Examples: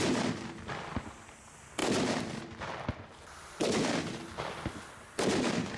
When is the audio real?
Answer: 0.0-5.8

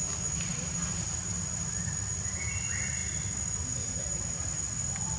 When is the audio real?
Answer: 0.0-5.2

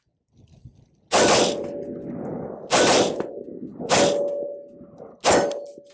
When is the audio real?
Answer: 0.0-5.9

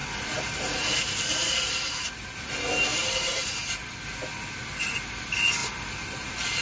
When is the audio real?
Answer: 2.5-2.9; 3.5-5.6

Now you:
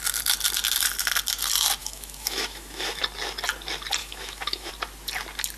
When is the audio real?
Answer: 0.0-1.8; 3.0-4.0; 4.7-5.6